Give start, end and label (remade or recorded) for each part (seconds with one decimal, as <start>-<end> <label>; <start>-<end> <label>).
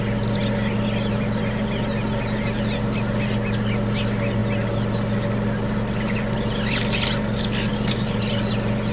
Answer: 0.0-7.7 recorded; 7.7-8.5 remade; 8.5-8.9 recorded